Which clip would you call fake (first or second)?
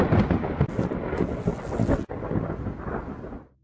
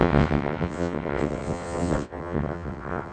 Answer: second